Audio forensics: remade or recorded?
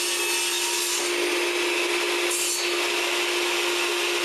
recorded